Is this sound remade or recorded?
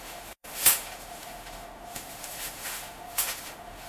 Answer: remade